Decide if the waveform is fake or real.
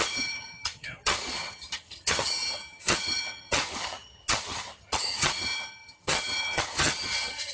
fake